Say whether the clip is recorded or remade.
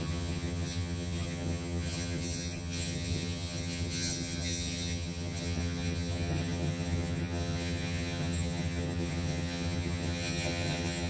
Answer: remade